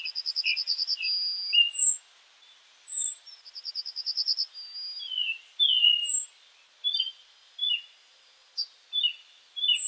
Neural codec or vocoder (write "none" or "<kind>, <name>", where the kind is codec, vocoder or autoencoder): none